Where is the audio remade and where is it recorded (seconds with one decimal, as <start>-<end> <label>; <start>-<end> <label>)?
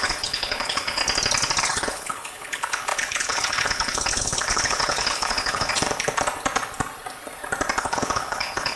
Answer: 0.0-1.0 remade; 1.0-1.6 recorded; 1.6-5.7 remade; 5.7-7.8 recorded; 7.8-8.8 remade